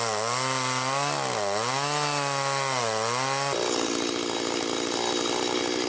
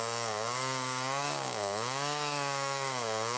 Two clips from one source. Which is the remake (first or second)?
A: second